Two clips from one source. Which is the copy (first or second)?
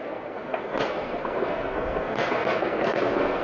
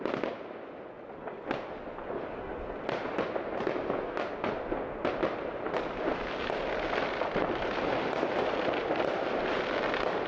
first